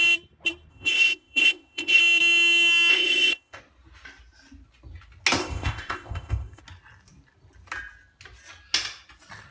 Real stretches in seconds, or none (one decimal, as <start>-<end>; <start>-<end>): 0.0-0.7; 2.0-2.9; 3.6-5.4; 6.6-9.5